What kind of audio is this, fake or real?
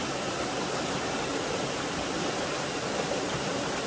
real